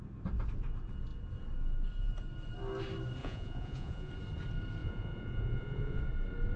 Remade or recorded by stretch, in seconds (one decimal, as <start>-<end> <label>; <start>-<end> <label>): 0.0-3.2 recorded; 3.2-4.1 remade; 4.1-4.8 recorded; 4.8-6.0 remade; 6.0-6.6 recorded